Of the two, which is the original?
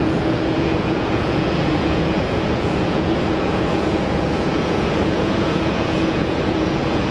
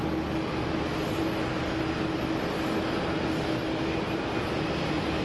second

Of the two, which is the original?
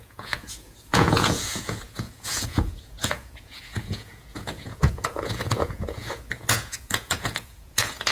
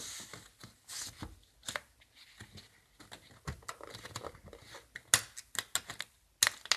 second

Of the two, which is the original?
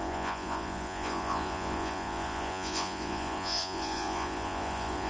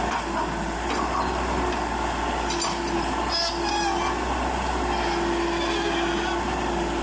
second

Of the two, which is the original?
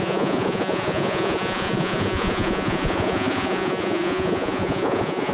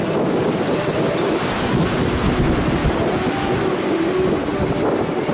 second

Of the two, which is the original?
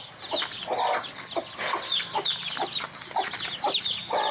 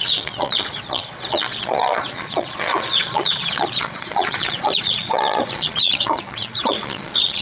first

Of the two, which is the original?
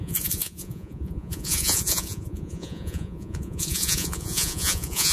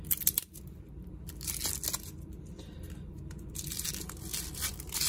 second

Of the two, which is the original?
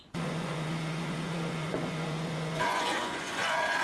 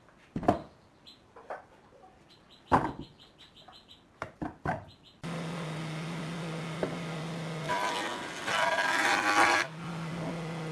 second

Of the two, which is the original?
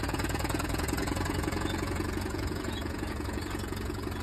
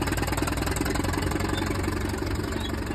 second